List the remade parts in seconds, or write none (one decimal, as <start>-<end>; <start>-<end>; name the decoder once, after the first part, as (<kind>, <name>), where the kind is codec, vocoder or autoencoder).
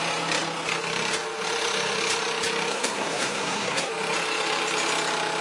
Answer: 2.7-3.9 (codec, SNAC)